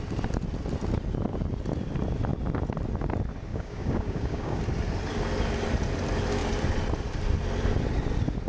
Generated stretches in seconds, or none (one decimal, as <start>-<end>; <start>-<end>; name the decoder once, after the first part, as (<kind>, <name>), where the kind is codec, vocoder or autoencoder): 3.5-4.6 (codec, DAC)